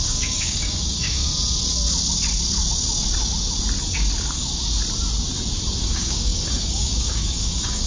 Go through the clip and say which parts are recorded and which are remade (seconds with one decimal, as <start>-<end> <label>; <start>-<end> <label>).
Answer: 0.0-1.3 remade; 1.3-5.8 recorded; 5.8-7.9 remade

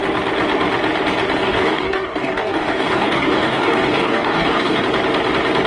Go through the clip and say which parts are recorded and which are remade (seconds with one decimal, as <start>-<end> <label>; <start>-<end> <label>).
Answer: 0.0-1.4 recorded; 1.4-4.8 remade; 4.8-5.7 recorded

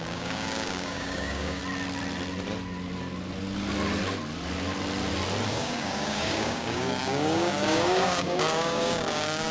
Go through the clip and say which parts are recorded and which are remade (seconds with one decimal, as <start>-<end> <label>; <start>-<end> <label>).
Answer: 0.0-1.6 remade; 1.6-5.5 recorded; 5.5-9.5 remade

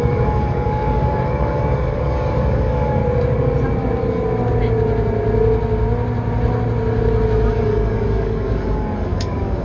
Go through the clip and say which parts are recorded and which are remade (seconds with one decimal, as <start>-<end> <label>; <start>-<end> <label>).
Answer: 0.0-3.0 remade; 3.0-7.5 recorded; 7.5-9.6 remade

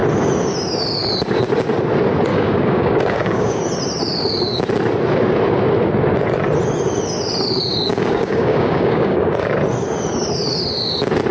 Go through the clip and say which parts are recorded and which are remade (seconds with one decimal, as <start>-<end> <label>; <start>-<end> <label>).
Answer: 0.0-2.3 recorded; 2.3-3.6 remade; 3.6-7.9 recorded; 7.9-9.3 remade; 9.3-11.3 recorded